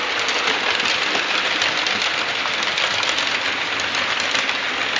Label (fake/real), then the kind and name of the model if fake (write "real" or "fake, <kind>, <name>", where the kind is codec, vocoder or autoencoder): real